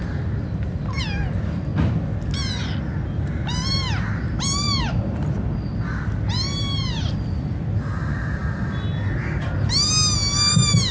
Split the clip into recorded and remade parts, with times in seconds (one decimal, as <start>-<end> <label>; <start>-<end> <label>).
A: 0.0-10.9 recorded

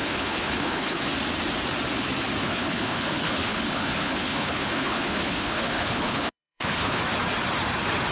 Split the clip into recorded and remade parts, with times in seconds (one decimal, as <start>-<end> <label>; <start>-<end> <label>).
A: 0.0-1.0 remade; 1.0-2.4 recorded; 2.4-7.0 remade; 7.0-8.1 recorded

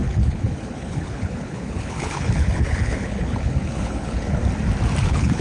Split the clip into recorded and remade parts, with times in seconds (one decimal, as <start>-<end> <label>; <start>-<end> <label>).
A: 0.0-4.4 remade; 4.4-5.0 recorded; 5.0-5.4 remade

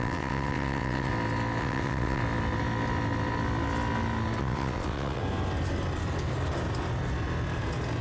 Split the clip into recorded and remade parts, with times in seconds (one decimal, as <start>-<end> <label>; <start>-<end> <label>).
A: 0.0-1.1 remade; 1.1-1.6 recorded; 1.6-2.2 remade; 2.2-4.4 recorded; 4.4-5.2 remade; 5.2-8.0 recorded

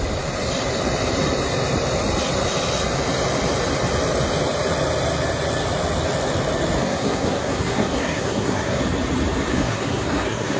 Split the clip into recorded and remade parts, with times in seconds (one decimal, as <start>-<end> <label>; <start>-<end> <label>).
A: 0.0-6.8 recorded; 6.8-8.8 remade; 8.8-9.5 recorded; 9.5-10.6 remade

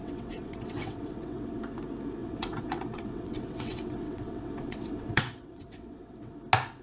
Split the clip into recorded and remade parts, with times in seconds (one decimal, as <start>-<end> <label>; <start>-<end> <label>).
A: 0.0-1.6 remade; 1.6-2.2 recorded; 2.2-6.3 remade; 6.3-6.8 recorded

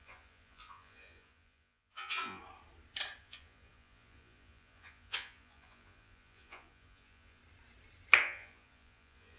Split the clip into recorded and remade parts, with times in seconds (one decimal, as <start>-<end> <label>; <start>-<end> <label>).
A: 0.0-2.4 remade; 2.4-3.2 recorded; 3.2-7.4 remade; 7.4-8.2 recorded; 8.2-9.4 remade

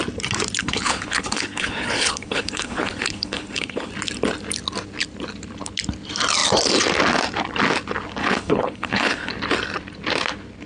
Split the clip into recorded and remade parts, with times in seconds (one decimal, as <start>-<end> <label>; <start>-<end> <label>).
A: 0.0-0.6 recorded; 0.6-3.9 remade; 3.9-8.2 recorded; 8.2-9.3 remade; 9.3-10.7 recorded